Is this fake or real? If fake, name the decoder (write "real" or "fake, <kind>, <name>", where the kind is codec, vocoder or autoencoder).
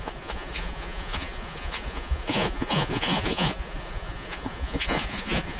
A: fake, vocoder, Vocos